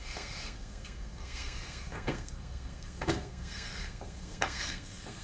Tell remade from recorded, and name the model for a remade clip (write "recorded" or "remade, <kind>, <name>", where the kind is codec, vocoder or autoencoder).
remade, codec, SNAC